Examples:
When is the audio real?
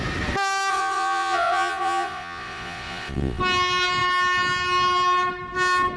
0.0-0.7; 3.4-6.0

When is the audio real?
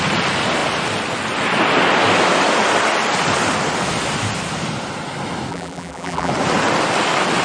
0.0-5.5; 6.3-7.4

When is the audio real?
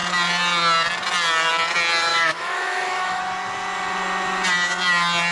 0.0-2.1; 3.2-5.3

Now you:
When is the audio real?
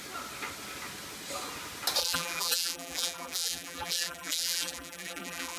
0.0-2.0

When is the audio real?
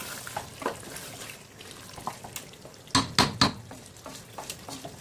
0.0-5.0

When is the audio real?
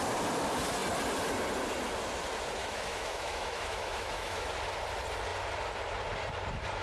0.0-2.6; 4.5-6.8